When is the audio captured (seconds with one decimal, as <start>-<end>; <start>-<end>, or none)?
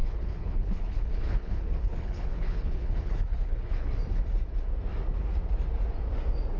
3.9-6.6